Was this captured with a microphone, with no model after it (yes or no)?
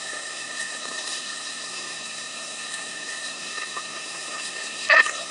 no